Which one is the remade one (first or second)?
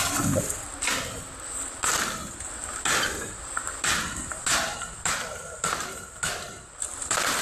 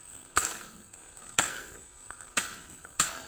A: second